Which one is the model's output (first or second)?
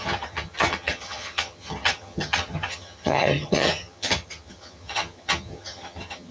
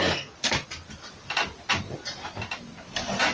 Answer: first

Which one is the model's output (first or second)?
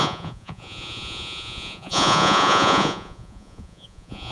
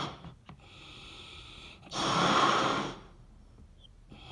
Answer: first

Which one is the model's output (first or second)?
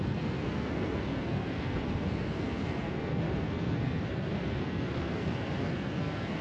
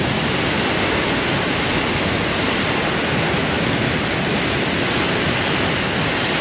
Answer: first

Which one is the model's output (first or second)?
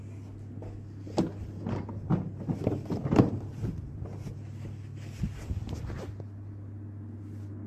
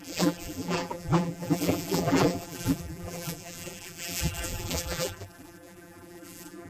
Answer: second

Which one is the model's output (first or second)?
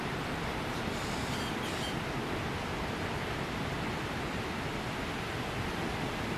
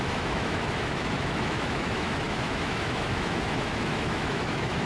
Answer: second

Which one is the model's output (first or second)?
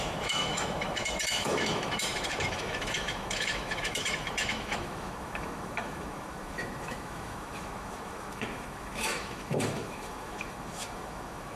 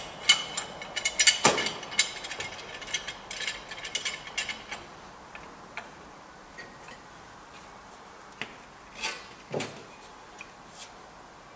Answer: first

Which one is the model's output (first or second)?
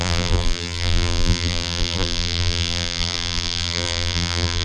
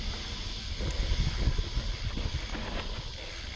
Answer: first